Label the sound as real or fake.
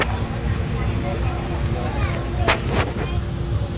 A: real